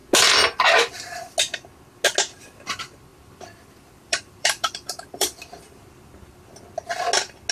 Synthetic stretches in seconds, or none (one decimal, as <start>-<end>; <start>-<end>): 3.1-5.6